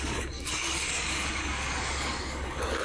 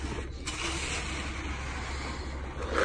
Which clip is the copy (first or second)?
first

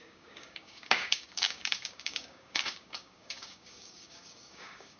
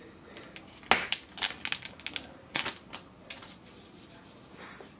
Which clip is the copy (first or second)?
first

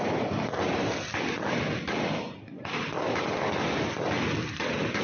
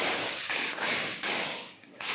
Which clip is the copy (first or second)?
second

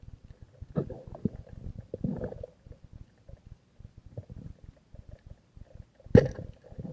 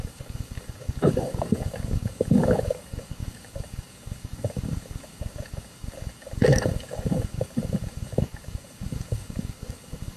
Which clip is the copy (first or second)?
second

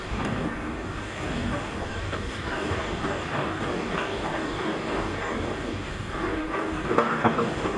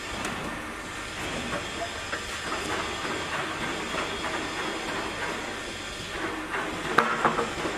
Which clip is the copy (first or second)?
first